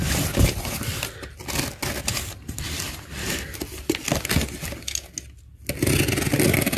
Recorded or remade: recorded